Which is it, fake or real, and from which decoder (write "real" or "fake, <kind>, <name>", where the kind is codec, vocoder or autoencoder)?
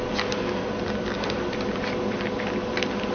real